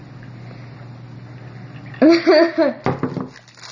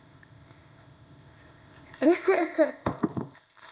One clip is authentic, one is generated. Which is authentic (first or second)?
first